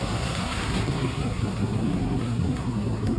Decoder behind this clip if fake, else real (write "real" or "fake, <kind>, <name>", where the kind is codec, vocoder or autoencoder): fake, codec, SNAC